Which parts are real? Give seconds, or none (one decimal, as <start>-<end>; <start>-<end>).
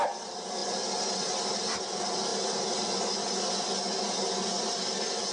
0.0-5.3